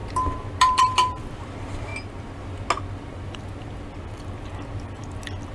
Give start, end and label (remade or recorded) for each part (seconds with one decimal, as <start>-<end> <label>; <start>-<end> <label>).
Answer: 0.0-0.6 recorded; 0.6-1.9 remade; 1.9-5.5 recorded